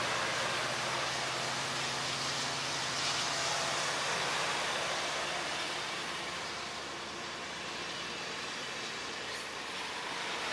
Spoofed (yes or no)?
no